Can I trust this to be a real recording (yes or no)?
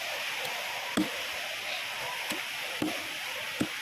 yes